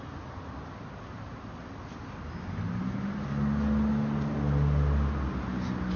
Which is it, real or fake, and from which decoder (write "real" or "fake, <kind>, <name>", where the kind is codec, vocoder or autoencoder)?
real